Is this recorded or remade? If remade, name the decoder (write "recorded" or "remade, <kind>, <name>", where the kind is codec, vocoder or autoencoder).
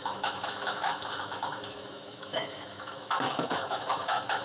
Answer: remade, autoencoder, DAC-VAE